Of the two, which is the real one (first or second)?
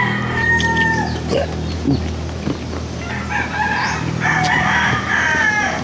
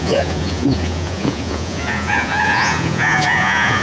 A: first